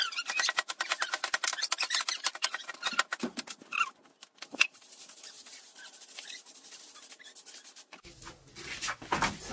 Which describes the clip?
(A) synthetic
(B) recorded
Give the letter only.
B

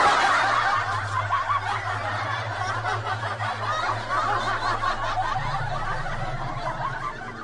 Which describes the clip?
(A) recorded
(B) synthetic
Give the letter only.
A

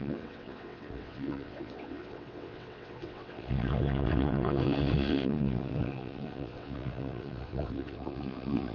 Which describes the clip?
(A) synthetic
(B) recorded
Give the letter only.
A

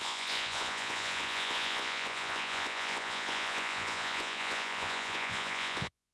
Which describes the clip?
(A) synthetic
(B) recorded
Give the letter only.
A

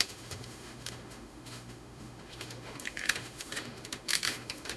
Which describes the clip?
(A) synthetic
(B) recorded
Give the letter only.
A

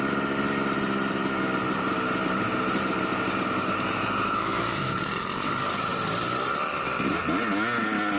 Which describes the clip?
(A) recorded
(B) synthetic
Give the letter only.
A